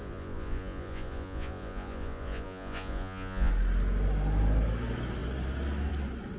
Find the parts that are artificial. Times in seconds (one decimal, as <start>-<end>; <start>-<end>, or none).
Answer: 0.0-3.5